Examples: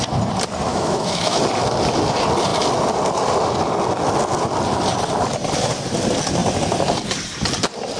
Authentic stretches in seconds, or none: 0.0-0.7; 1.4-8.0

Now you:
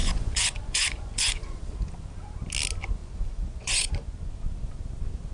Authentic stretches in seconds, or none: 1.6-3.0; 4.3-5.3

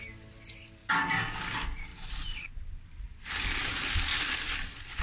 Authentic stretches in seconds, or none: 0.0-5.0

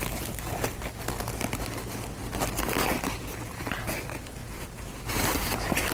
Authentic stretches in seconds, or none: 0.0-2.2; 3.6-4.4; 5.0-5.9

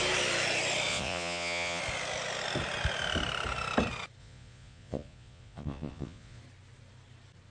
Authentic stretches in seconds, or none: 0.0-0.9; 1.8-4.2; 6.4-7.5